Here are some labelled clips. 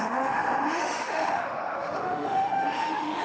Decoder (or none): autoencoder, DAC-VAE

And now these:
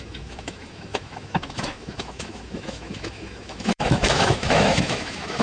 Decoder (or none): autoencoder, DAC-VAE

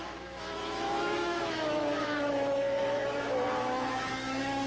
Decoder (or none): autoencoder, DAC-VAE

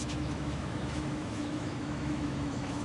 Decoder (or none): autoencoder, DAC-VAE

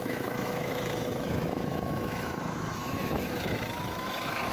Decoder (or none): autoencoder, DAC-VAE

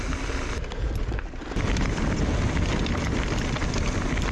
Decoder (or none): none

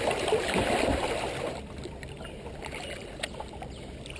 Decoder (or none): none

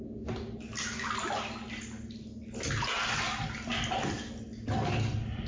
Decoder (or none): none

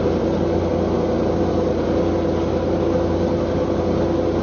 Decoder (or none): none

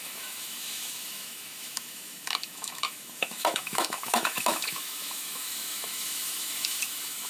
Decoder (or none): autoencoder, DAC-VAE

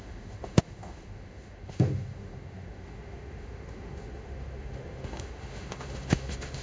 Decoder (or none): autoencoder, DAC-VAE